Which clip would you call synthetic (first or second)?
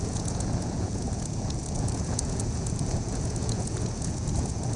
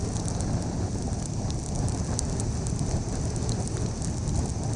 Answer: first